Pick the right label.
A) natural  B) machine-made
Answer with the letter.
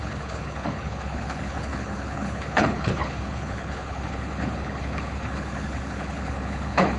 B